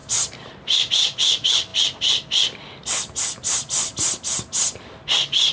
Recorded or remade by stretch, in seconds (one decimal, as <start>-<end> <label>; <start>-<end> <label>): 0.0-5.5 recorded